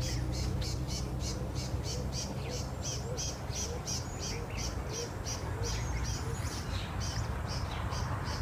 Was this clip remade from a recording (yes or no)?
no